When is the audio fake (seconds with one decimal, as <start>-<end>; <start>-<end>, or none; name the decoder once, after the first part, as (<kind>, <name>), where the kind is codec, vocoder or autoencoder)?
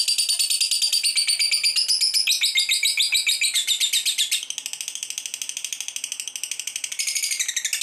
none